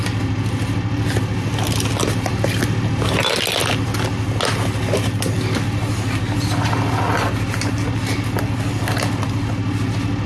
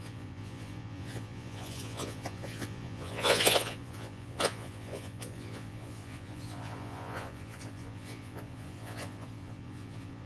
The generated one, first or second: second